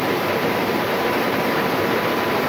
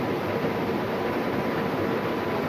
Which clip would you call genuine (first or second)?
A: second